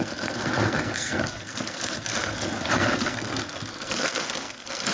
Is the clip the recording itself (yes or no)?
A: no